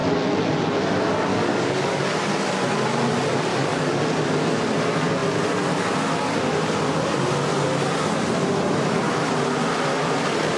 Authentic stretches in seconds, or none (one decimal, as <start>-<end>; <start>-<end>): 0.0-1.3; 2.0-3.5; 4.0-10.6